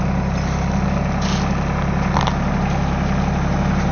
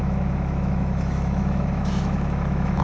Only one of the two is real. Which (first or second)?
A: first